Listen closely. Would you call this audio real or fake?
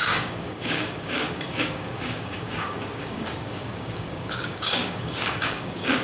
fake